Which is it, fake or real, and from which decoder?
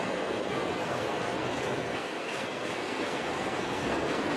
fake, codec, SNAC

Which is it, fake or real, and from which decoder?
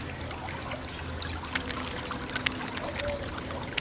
real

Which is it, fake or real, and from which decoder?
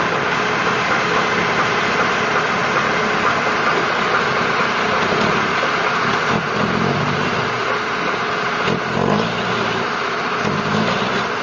real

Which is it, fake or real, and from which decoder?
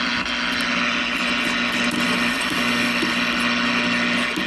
real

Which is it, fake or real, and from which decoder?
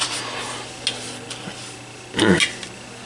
real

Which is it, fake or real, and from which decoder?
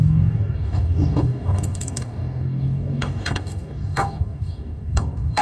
fake, codec, DAC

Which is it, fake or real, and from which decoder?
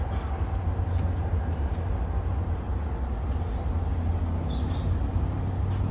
real